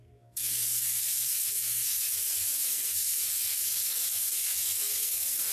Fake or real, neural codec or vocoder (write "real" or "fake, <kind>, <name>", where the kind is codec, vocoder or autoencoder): fake, codec, SNAC